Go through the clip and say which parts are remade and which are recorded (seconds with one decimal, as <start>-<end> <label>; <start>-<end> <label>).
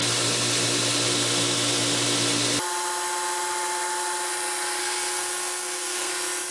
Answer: 0.0-4.8 recorded; 4.8-6.1 remade; 6.1-6.5 recorded